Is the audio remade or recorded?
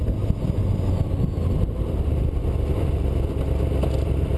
remade